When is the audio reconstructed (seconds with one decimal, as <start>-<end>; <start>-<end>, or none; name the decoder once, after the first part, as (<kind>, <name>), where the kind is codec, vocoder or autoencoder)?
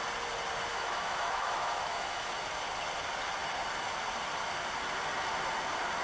0.7-2.3 (autoencoder, DAC-VAE)